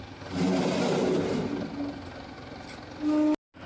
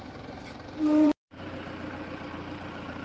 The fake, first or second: second